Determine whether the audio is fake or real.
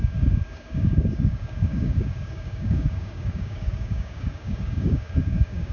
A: fake